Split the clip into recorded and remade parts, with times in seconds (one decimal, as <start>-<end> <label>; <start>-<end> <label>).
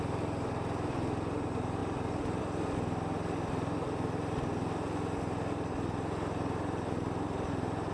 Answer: 0.0-7.9 recorded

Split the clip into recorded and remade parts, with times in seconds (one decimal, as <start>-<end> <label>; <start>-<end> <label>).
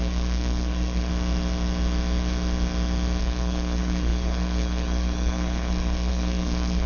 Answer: 0.0-1.1 remade; 1.1-3.2 recorded; 3.2-6.9 remade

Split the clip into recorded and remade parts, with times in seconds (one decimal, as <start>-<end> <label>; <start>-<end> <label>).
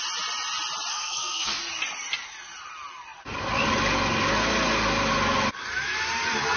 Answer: 0.0-0.9 recorded; 0.9-1.6 remade; 1.6-6.6 recorded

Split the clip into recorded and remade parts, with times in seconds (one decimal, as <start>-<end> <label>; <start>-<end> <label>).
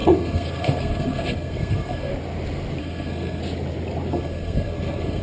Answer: 0.0-2.1 remade; 2.1-2.8 recorded; 2.8-3.4 remade; 3.4-4.1 recorded; 4.1-5.2 remade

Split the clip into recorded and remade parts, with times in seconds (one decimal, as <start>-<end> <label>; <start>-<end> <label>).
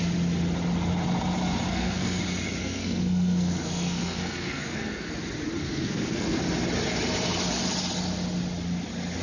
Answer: 0.0-1.7 recorded; 1.7-2.2 remade; 2.2-2.6 recorded; 2.6-5.1 remade; 5.1-5.6 recorded; 5.6-6.4 remade; 6.4-9.2 recorded